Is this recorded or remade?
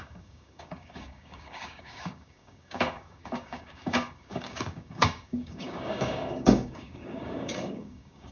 remade